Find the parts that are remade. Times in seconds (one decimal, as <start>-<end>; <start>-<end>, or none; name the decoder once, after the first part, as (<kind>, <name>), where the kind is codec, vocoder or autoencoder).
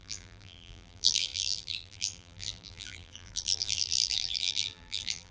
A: 0.0-5.3 (vocoder, BigVGAN v2)